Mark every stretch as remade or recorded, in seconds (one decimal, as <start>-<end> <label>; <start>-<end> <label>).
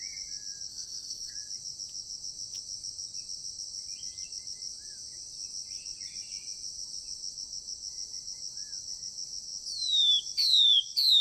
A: 0.0-0.7 recorded; 0.7-1.3 remade; 1.3-11.2 recorded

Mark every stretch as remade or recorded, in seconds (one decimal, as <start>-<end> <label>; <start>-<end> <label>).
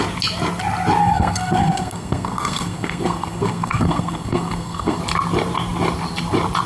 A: 0.0-1.0 recorded; 1.0-5.0 remade; 5.0-6.7 recorded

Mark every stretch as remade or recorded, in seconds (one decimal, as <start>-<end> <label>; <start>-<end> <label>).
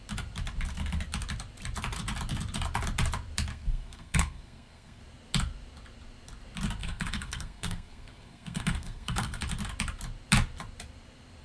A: 0.0-3.5 recorded; 3.5-5.0 remade; 5.0-6.8 recorded; 6.8-9.4 remade; 9.4-11.4 recorded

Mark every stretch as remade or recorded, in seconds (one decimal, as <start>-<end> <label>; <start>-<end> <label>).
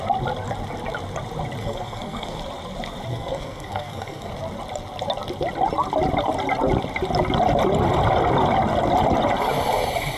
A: 0.0-1.6 recorded; 1.6-2.4 remade; 2.4-3.1 recorded; 3.1-4.3 remade; 4.3-10.2 recorded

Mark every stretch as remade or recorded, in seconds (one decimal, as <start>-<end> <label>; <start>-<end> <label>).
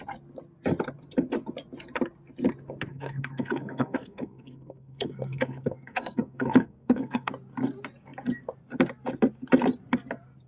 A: 0.0-2.9 recorded; 2.9-7.3 remade; 7.3-10.5 recorded